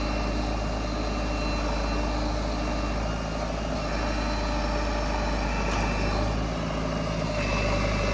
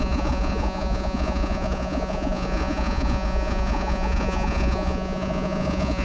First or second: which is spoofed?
second